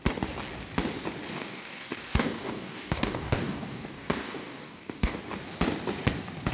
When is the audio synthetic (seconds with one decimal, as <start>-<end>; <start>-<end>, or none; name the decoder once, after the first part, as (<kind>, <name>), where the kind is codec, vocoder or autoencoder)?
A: 1.3-5.2 (codec, DAC)